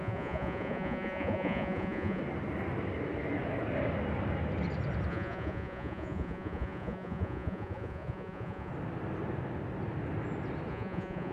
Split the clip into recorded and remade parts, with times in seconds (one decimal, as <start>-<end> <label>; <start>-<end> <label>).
0.0-2.2 remade; 2.2-5.1 recorded; 5.1-8.7 remade; 8.7-10.7 recorded; 10.7-11.3 remade